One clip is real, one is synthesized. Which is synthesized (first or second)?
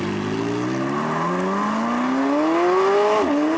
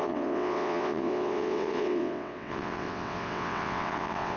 second